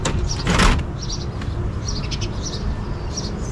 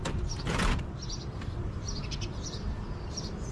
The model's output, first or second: second